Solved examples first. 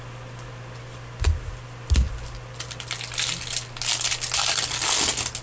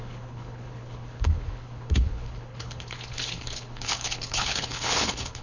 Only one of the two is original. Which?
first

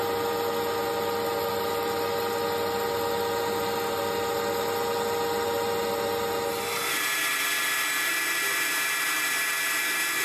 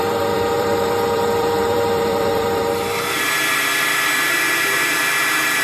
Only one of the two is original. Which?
first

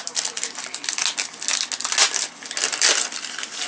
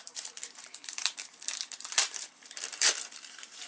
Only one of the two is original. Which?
first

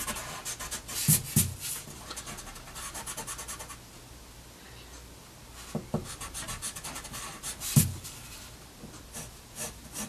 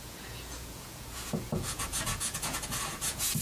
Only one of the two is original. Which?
first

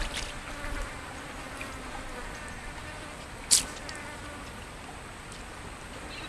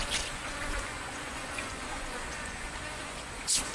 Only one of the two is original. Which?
first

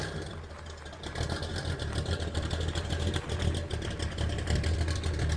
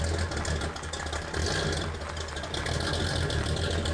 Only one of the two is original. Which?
second